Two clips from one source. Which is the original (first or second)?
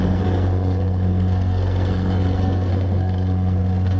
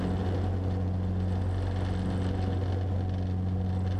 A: second